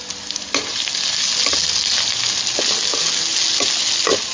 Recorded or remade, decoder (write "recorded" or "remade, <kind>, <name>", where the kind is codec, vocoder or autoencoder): recorded